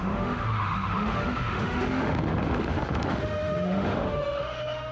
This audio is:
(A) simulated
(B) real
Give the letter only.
A